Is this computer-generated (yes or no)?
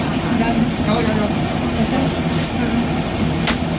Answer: no